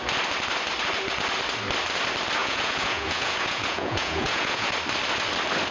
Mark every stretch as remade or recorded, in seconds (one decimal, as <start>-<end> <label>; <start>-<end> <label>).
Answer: 0.0-2.4 recorded; 2.4-4.7 remade; 4.7-5.7 recorded